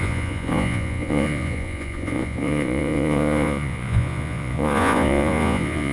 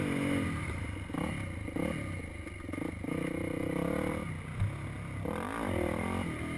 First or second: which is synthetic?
first